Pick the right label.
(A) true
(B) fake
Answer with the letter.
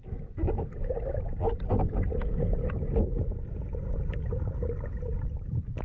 A